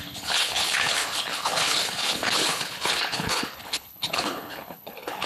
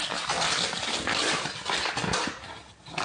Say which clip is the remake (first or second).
first